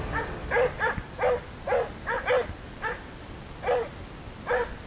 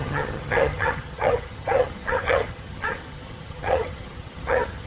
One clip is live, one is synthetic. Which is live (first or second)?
first